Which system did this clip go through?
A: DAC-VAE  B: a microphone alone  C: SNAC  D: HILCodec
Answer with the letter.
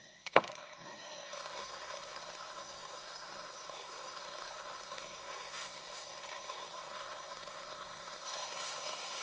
C